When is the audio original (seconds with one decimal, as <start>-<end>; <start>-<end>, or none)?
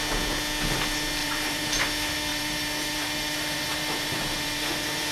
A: 0.0-1.2; 1.9-2.3